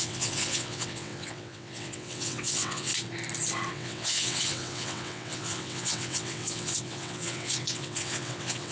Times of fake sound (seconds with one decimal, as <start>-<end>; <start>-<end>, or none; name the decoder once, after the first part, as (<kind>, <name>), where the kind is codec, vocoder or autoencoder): 0.0-2.9 (vocoder, WaveNeXt); 3.7-8.7